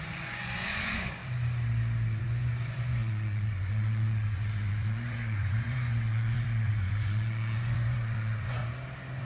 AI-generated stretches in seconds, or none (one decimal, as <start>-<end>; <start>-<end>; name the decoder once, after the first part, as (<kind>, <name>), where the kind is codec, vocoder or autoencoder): 0.0-1.2 (vocoder, Vocos); 2.2-8.6

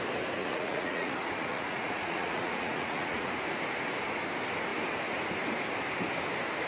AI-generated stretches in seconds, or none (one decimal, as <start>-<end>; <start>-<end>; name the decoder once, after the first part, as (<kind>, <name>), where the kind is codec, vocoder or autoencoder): 0.4-3.3 (vocoder, Vocos)

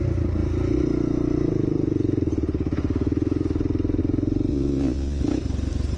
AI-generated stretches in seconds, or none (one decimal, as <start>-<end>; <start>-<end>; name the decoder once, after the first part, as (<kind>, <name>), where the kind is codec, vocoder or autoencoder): 4.5-5.2 (vocoder, Vocos)

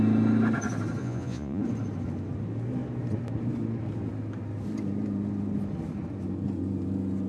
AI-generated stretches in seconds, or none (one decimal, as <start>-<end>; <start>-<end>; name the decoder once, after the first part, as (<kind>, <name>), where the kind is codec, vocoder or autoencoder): 1.0-1.6 (vocoder, Vocos)